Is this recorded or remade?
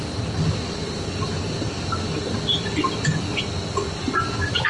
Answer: recorded